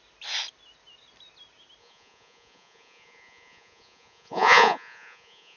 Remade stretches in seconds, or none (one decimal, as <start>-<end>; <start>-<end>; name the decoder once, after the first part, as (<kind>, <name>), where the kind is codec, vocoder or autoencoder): 1.8-5.6 (vocoder, Vocos)